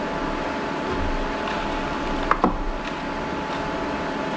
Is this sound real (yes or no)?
yes